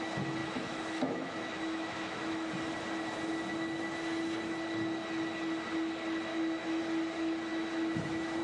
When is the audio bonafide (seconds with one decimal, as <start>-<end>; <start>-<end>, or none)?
0.0-0.4; 2.5-6.3; 6.8-7.5